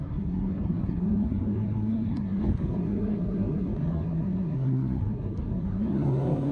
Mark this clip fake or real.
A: fake